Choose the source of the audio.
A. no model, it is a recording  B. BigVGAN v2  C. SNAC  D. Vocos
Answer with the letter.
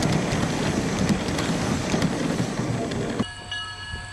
A